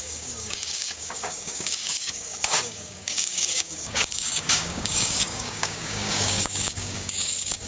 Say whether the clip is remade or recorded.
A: remade